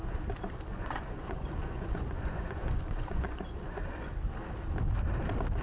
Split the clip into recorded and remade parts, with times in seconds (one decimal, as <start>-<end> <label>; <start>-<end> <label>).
0.0-0.7 recorded; 0.7-4.1 remade; 4.1-5.6 recorded